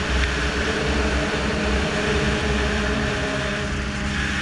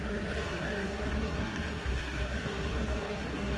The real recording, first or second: first